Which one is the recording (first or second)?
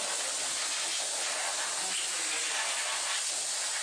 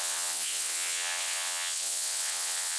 first